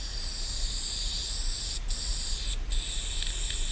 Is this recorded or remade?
recorded